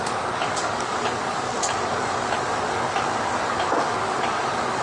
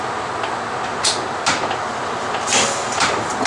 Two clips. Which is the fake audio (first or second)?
first